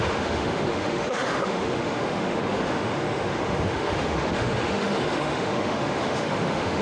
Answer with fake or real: fake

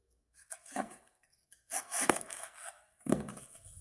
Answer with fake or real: fake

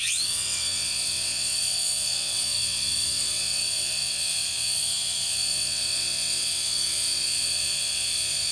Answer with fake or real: fake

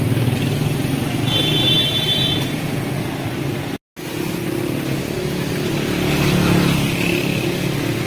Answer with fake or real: real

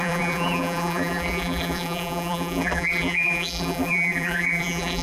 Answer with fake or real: fake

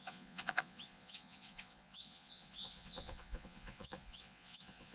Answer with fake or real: fake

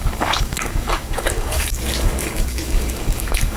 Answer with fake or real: fake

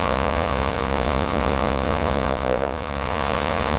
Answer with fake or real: fake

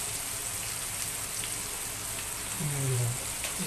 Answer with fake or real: real